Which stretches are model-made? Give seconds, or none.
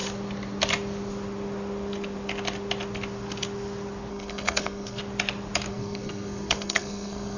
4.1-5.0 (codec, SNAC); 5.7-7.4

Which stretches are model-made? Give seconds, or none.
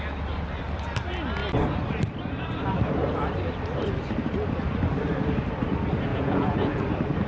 6.1-6.8 (vocoder, Vocos)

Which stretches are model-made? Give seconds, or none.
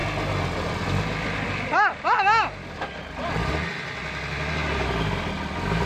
none